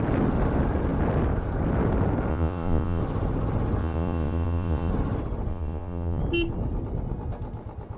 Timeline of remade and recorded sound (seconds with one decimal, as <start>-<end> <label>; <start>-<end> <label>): 0.0-2.3 recorded; 2.3-3.0 remade; 3.0-3.8 recorded; 3.8-4.9 remade; 4.9-5.5 recorded; 5.5-6.2 remade; 6.2-8.0 recorded